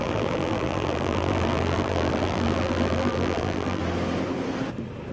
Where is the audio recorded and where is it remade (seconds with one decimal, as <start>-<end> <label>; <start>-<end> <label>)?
0.0-3.8 remade; 3.8-5.1 recorded